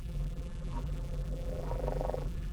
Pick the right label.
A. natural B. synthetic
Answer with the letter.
B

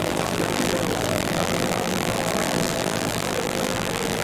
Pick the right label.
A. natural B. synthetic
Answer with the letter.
B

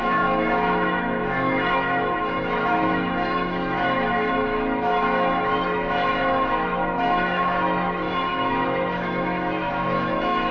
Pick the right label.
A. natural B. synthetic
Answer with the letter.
B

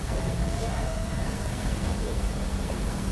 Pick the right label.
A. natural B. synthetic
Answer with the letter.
B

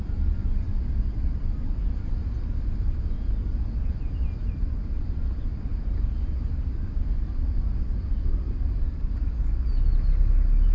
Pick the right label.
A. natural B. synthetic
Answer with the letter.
A